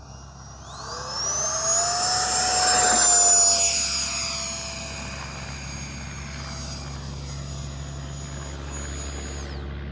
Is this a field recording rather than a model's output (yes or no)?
yes